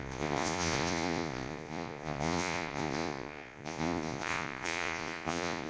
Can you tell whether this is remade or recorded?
remade